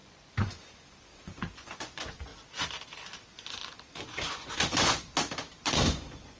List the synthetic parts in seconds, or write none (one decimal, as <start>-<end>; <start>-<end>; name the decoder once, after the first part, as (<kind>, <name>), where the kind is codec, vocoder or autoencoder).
0.0-2.3 (vocoder, Vocos); 3.3-5.1; 5.6-6.4